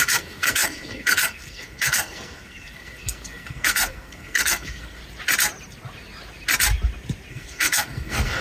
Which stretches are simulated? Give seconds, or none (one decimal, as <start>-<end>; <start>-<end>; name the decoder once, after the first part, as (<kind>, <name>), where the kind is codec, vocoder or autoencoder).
0.0-5.0 (codec, SNAC); 7.3-8.4